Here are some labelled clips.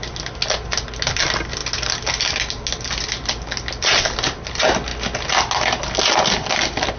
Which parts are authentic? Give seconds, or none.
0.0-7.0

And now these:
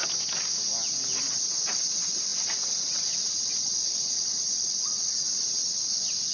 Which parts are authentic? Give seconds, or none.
0.0-1.2

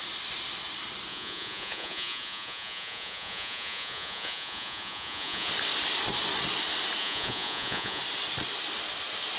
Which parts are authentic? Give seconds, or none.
0.0-1.1; 5.5-7.0; 8.0-9.4

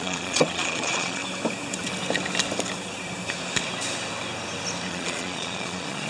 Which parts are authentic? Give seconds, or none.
1.2-4.9